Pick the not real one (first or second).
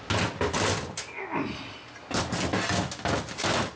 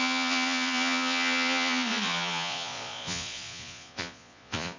second